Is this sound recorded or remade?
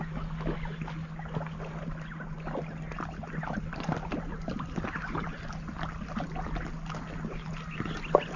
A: recorded